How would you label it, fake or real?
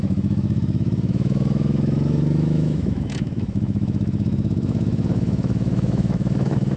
fake